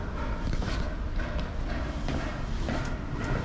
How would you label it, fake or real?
real